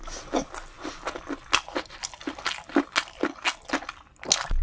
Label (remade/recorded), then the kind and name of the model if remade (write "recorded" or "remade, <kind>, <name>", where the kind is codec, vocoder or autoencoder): recorded